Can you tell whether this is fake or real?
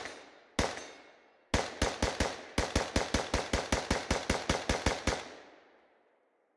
real